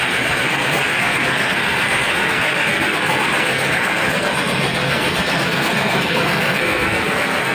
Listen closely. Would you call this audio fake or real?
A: fake